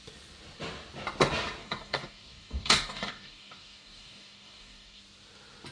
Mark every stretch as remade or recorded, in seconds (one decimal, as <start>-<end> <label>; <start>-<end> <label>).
0.0-1.6 recorded; 1.6-5.0 remade; 5.0-5.7 recorded